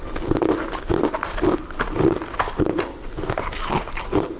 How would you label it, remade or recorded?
recorded